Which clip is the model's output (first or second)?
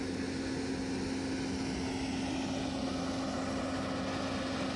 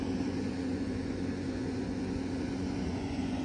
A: second